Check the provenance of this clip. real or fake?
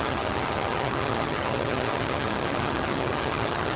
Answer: fake